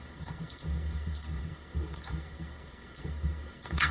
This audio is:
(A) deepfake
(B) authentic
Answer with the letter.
A